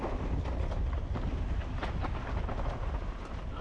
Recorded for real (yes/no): yes